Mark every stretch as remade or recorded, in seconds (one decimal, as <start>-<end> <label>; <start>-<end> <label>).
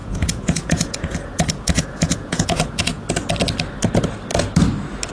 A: 0.0-3.1 remade; 3.1-5.1 recorded